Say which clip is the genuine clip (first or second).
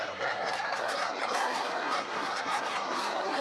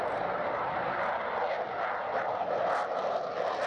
second